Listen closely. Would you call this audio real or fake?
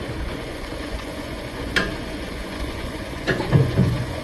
fake